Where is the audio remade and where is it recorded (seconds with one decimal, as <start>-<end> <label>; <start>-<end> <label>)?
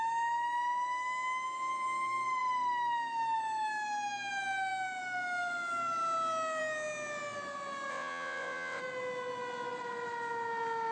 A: 0.0-7.9 recorded; 7.9-8.8 remade; 8.8-10.9 recorded